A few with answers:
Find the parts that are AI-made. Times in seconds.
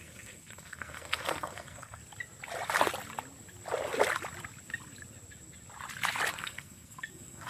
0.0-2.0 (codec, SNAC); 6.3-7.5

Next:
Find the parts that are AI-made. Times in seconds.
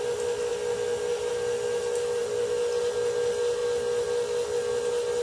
none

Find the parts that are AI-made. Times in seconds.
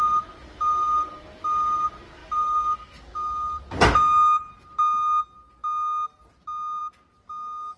none